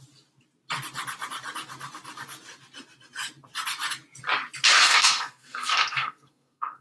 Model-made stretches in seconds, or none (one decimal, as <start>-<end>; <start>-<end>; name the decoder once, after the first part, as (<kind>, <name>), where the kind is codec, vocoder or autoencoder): 4.8-6.8 (codec, SNAC)